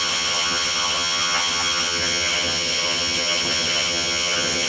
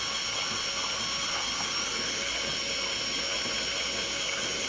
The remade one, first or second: first